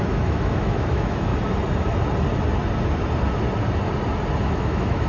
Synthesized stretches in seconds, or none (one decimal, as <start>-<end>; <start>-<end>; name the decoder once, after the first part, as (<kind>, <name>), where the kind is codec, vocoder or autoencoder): 0.0-1.3 (autoencoder, DAC-VAE); 4.4-5.1